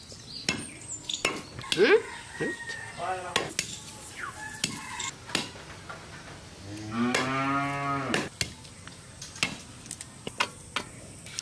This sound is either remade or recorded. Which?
recorded